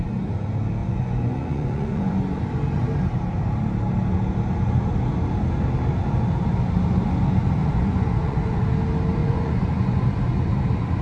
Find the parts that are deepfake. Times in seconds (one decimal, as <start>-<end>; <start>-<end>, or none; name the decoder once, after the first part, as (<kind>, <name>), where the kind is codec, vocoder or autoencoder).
0.8-2.2 (vocoder, Vocos); 7.6-8.6; 9.2-10.0